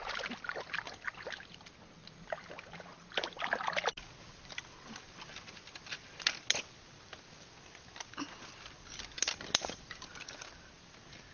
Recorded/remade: recorded